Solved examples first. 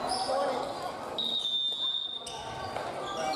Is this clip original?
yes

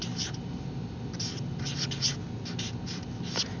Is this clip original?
yes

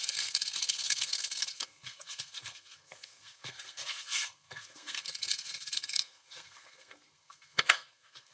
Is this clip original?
no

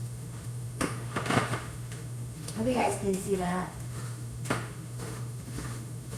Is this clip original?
no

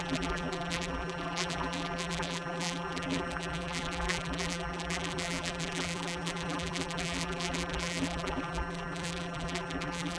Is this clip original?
no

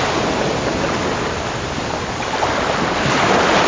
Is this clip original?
yes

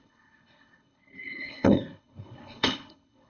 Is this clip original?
no